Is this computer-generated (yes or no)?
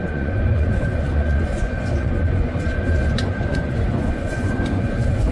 yes